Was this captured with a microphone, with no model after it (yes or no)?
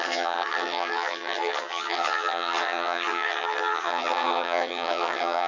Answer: no